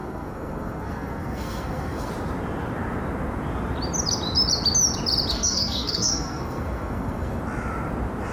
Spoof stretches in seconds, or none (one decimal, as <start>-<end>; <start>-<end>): 0.0-2.1; 5.3-7.4